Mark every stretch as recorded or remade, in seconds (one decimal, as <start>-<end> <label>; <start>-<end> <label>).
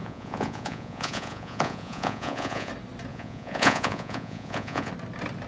0.0-2.7 remade; 2.7-3.1 recorded; 3.1-4.9 remade; 4.9-5.5 recorded